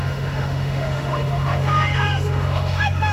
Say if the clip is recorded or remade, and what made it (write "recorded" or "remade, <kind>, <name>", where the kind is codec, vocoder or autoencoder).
remade, autoencoder, DAC-VAE